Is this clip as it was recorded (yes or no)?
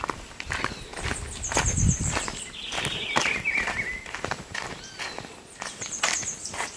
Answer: yes